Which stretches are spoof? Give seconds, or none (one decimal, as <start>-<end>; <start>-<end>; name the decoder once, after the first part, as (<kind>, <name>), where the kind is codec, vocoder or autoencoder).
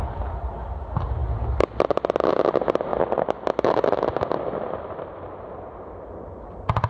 none